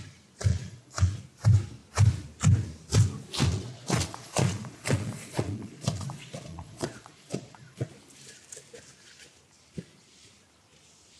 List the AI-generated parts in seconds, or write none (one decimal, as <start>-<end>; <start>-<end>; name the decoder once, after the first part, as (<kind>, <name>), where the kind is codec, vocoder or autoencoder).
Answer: 0.5-1.2 (vocoder, Vocos); 3.5-7.9